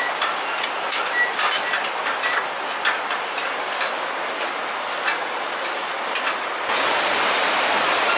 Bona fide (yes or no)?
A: yes